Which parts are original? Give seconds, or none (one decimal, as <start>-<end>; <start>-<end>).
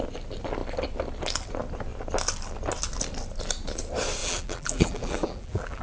0.0-4.2